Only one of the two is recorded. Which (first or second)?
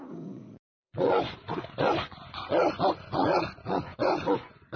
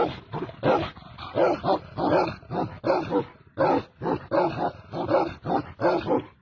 second